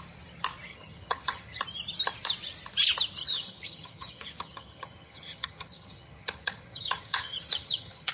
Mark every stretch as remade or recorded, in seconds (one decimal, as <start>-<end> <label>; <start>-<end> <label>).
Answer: 0.0-0.7 recorded; 0.7-1.6 remade; 1.6-3.2 recorded; 3.2-8.1 remade